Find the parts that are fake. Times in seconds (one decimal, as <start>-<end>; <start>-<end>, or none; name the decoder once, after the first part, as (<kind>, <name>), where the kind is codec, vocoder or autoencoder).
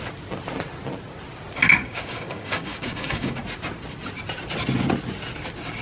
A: 1.7-3.4 (codec, DAC)